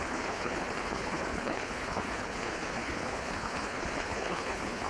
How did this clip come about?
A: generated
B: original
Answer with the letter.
A